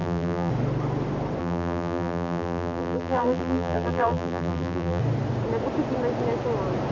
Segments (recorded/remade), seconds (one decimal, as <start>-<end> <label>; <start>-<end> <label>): 0.0-0.5 remade; 0.5-1.4 recorded; 1.4-5.0 remade; 5.0-6.9 recorded